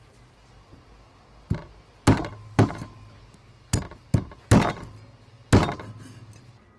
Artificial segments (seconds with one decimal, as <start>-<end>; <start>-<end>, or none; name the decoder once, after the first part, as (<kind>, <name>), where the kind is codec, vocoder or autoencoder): none

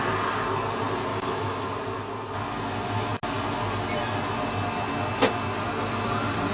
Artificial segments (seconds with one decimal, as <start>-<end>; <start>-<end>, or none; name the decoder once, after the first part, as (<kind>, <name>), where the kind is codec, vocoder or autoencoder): 1.1-1.7 (autoencoder, DAC-VAE)

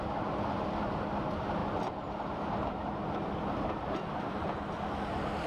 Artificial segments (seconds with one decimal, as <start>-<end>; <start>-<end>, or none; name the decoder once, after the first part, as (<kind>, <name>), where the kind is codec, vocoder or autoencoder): none

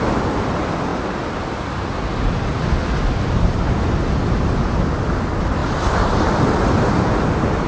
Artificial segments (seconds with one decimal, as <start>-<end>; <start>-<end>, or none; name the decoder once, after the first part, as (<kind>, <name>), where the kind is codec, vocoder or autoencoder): none

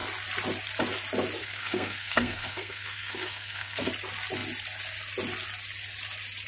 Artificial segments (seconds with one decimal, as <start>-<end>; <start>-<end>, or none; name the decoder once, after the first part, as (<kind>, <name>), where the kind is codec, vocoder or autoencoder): 1.4-3.9 (codec, SNAC)

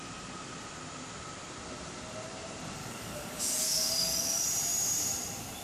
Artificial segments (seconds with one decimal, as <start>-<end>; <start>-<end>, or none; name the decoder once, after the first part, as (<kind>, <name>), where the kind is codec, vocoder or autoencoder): 2.8-4.4 (codec, DAC)

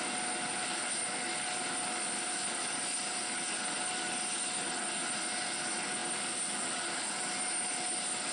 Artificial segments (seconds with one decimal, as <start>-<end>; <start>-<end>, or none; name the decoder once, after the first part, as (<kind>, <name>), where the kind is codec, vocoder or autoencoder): none